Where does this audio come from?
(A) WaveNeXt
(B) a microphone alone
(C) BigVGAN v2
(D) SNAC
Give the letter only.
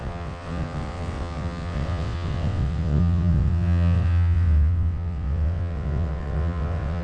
A